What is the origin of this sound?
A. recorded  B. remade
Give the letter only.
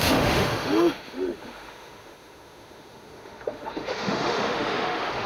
B